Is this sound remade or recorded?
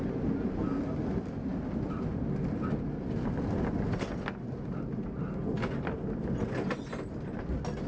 recorded